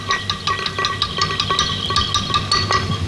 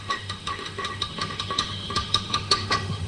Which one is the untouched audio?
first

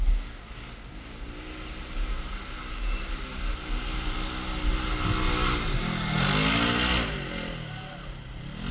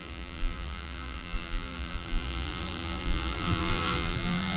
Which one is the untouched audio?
first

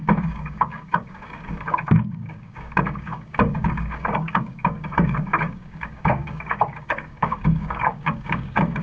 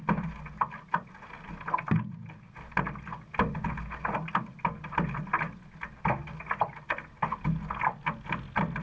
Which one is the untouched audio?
second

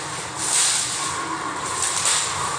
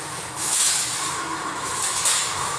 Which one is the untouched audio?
first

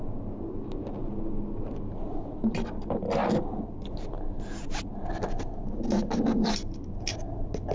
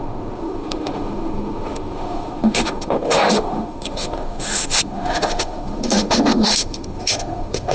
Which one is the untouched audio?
first